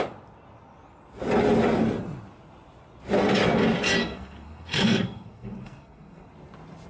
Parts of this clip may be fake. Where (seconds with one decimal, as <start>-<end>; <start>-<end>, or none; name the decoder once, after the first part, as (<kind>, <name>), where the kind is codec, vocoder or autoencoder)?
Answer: 4.0-6.3 (codec, SNAC)